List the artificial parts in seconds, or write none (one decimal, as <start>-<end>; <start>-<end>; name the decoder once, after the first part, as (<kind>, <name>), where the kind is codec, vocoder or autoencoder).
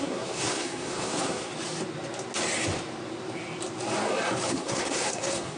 0.0-1.5 (codec, SNAC); 4.5-5.6